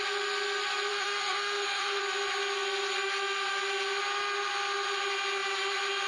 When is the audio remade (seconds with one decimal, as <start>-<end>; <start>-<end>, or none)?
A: 0.9-2.0